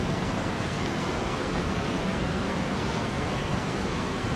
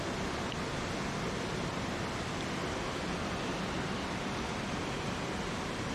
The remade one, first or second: first